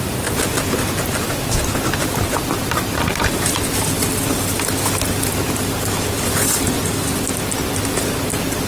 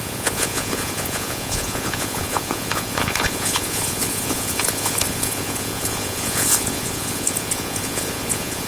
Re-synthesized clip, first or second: second